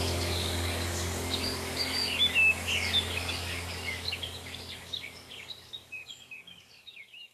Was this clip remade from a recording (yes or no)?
yes